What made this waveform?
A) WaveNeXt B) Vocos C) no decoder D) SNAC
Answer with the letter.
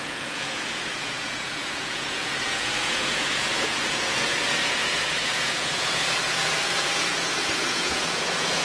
B